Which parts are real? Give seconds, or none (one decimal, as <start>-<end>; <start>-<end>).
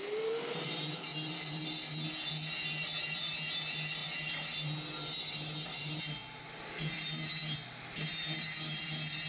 0.0-9.3